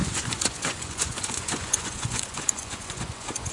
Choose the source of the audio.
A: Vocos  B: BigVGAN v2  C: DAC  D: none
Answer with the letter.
A